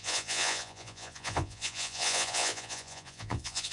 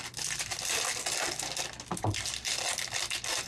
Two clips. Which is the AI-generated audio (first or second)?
first